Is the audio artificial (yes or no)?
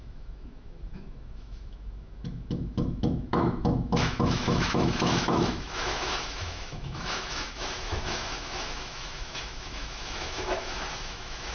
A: yes